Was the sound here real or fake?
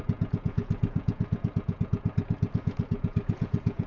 fake